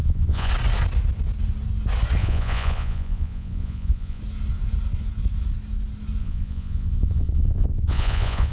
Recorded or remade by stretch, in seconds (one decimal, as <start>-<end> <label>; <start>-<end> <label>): 0.0-0.5 remade; 0.5-2.2 recorded; 2.2-4.2 remade; 4.2-6.2 recorded; 6.2-8.5 remade